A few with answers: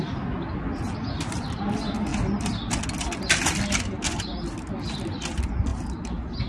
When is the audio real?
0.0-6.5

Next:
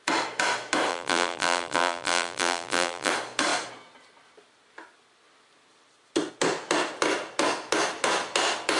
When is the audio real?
0.0-0.9; 3.1-8.8

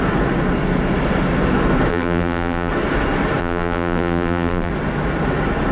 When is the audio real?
0.0-1.9; 2.7-3.4; 4.7-5.7